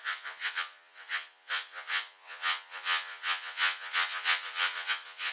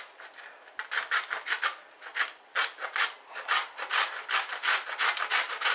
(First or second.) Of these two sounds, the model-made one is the first